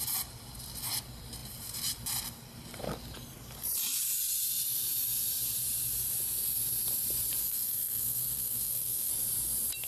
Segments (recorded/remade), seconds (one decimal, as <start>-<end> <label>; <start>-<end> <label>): 0.0-7.4 recorded; 7.4-9.1 remade; 9.1-9.9 recorded